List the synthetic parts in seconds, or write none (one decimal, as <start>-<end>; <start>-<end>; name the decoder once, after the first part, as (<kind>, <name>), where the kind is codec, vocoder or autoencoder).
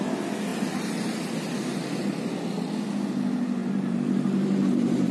3.6-5.1 (vocoder, BigVGAN v2)